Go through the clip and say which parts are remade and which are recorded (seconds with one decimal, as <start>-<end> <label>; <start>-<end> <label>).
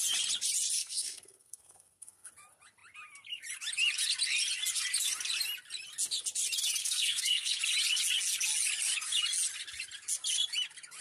0.0-0.8 recorded; 0.8-2.3 remade; 2.3-6.8 recorded; 6.8-7.6 remade; 7.6-11.0 recorded